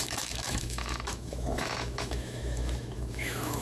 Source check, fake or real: fake